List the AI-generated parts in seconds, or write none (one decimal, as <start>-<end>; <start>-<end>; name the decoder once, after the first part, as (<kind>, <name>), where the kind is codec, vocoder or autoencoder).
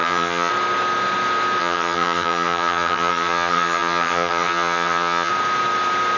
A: 0.0-0.5 (vocoder, HiFi-GAN); 1.6-5.3